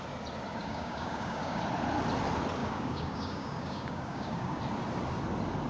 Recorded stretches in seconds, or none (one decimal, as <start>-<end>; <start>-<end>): 0.0-0.5; 1.6-2.6; 4.6-5.7